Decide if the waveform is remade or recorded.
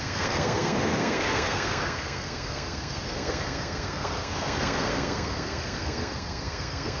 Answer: remade